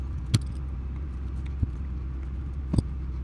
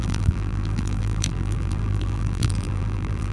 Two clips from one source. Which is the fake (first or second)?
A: second